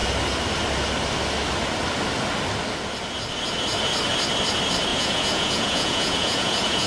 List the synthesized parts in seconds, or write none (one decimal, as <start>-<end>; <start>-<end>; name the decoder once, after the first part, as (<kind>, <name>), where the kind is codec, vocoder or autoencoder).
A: 4.9-6.9 (vocoder, Vocos)